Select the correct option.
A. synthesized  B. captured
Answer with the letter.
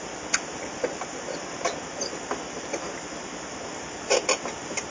B